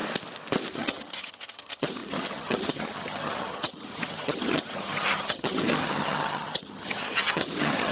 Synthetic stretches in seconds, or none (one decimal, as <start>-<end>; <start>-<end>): 0.7-7.9